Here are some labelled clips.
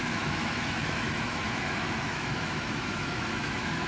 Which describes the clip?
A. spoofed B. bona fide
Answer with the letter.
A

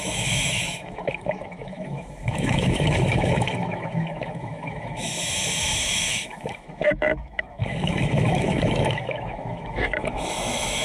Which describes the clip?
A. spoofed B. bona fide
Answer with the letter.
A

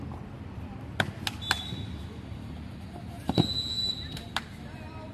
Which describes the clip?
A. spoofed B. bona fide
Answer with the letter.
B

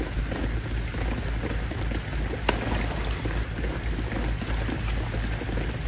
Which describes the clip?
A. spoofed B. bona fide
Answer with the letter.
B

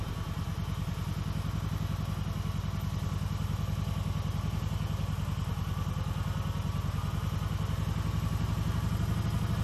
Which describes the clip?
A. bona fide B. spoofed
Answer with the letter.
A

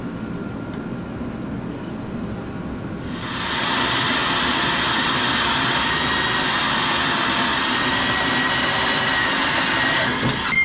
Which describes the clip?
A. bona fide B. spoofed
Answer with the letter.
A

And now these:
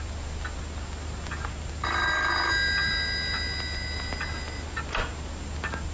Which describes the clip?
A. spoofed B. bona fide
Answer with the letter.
B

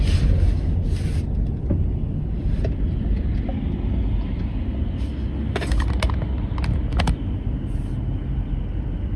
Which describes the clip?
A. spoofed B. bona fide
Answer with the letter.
B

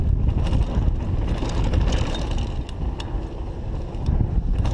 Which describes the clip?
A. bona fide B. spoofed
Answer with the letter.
A